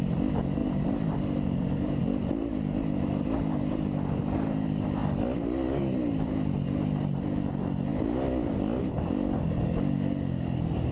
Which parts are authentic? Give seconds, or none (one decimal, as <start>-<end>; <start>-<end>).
0.0-0.6; 2.0-10.9